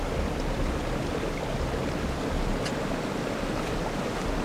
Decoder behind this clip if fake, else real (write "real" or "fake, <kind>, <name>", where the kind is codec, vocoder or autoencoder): real